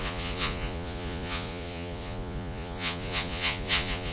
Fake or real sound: fake